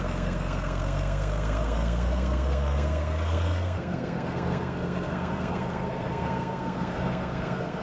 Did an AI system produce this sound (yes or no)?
yes